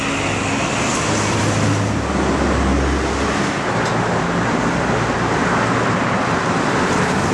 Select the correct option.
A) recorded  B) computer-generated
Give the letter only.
A